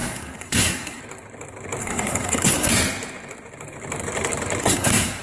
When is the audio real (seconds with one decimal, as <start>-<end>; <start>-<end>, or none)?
1.0-1.8; 2.7-4.6